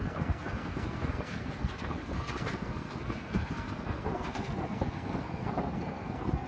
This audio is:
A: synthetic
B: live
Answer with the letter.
A